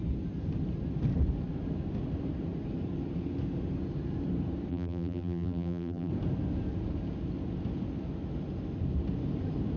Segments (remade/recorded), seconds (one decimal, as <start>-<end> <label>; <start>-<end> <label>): 0.0-4.7 recorded; 4.7-6.1 remade; 6.1-9.8 recorded